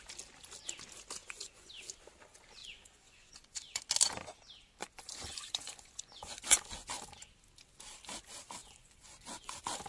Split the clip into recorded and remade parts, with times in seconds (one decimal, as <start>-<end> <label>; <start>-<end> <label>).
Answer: 0.0-1.2 recorded; 1.2-1.7 remade; 1.7-2.6 recorded; 2.6-3.8 remade; 3.8-4.8 recorded; 4.8-6.6 remade; 6.6-8.6 recorded; 8.6-9.5 remade; 9.5-9.9 recorded